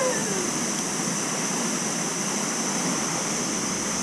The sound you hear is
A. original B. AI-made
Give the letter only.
A